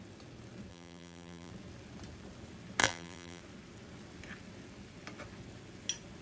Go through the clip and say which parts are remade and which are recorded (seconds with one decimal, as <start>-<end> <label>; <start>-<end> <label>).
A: 0.0-0.7 recorded; 0.7-1.5 remade; 1.5-2.8 recorded; 2.8-3.4 remade; 3.4-6.2 recorded